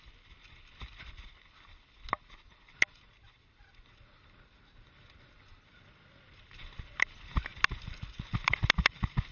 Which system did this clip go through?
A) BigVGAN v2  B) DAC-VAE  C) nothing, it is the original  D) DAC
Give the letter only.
C